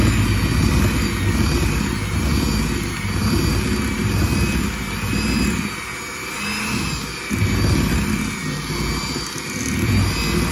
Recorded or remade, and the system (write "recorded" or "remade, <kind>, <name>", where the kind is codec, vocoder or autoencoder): recorded